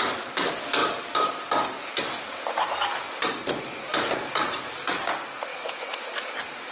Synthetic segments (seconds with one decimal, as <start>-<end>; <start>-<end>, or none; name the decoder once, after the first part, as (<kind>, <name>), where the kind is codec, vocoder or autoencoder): 5.5-6.3 (autoencoder, DAC-VAE)